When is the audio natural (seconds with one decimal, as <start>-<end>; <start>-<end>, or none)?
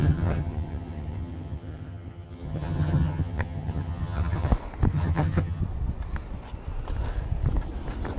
4.5-4.9; 5.6-8.2